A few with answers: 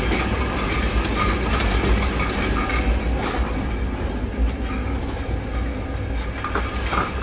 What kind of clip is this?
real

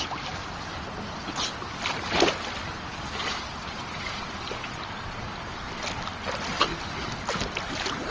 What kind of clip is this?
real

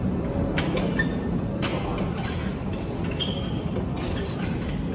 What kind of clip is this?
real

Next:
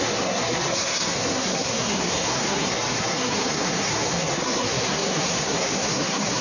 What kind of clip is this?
fake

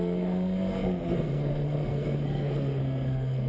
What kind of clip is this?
fake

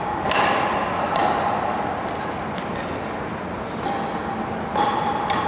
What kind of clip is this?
real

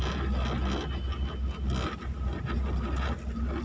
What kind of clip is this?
real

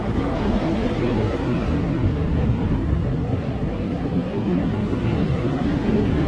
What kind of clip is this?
fake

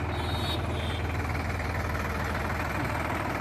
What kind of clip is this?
real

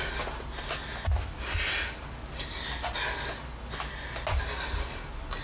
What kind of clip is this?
real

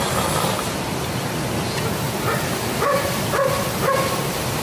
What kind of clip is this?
real